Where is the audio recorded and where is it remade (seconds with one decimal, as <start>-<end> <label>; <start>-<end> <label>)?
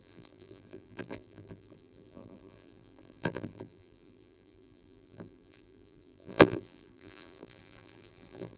0.0-8.6 remade